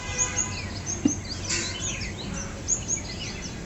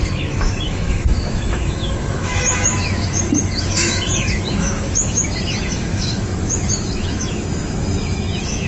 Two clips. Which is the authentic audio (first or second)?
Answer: first